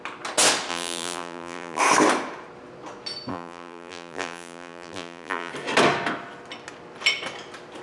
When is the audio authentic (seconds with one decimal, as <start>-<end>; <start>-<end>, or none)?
0.0-0.7; 1.8-3.3; 5.5-7.8